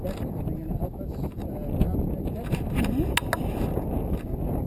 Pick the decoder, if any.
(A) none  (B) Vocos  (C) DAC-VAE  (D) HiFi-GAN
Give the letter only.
A